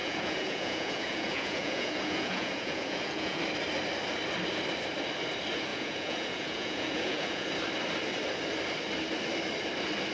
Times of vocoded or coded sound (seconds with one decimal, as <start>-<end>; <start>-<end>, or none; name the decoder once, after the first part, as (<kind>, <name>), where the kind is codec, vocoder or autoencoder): 0.0-3.4 (vocoder, Vocos); 5.7-7.5